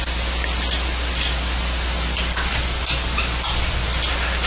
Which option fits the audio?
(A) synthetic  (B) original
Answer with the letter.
B